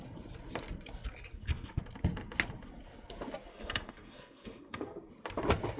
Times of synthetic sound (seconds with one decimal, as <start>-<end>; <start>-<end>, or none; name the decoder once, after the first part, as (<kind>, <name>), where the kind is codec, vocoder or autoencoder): 1.3-1.8 (codec, SNAC); 3.5-5.1